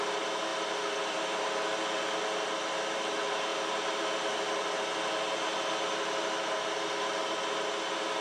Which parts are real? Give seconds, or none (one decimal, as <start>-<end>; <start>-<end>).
0.0-8.2